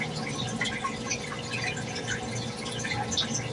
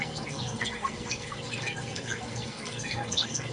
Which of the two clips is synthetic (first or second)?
second